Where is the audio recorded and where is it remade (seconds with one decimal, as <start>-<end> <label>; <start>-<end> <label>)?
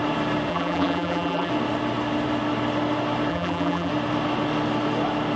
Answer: 0.0-0.5 recorded; 0.5-1.5 remade; 1.5-3.3 recorded; 3.3-3.9 remade; 3.9-5.4 recorded